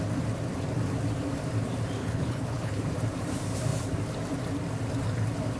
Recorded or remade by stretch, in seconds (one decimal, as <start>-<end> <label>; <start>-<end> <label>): 0.0-2.0 recorded; 2.0-2.8 remade; 2.8-5.6 recorded